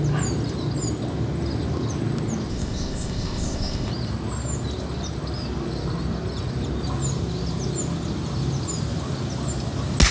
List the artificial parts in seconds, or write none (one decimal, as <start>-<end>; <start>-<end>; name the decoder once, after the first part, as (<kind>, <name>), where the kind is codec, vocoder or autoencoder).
2.5-3.9 (codec, ZipCodec)